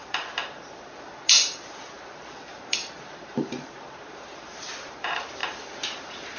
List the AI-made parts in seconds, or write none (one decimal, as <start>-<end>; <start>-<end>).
0.0-5.4; 6.0-6.4